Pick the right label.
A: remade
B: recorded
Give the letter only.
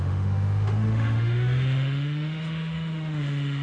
A